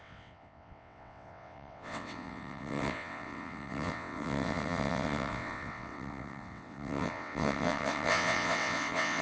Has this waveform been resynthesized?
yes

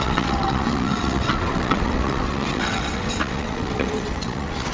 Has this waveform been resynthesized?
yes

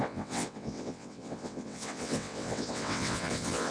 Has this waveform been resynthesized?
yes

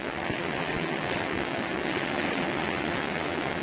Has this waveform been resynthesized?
yes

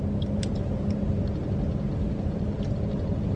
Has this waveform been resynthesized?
no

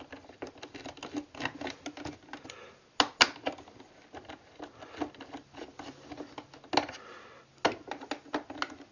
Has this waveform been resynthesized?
no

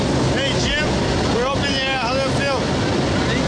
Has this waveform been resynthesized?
no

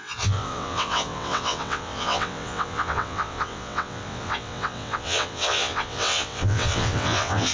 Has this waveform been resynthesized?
yes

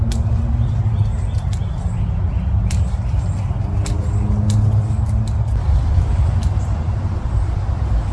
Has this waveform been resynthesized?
no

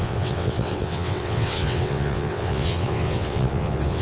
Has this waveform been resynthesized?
yes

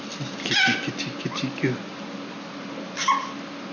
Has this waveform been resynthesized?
no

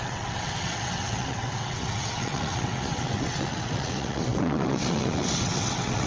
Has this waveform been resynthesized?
yes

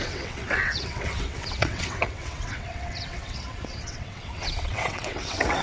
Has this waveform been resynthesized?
yes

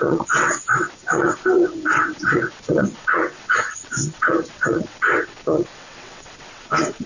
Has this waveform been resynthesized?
yes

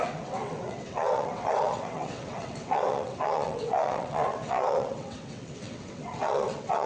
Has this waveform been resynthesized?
yes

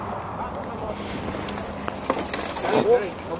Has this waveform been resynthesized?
no